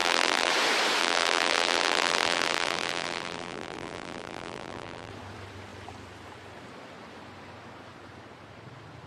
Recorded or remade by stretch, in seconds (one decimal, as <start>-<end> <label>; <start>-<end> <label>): 0.0-0.5 remade; 0.5-1.0 recorded; 1.0-5.1 remade; 5.1-9.1 recorded